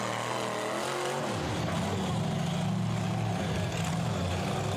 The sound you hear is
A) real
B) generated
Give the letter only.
A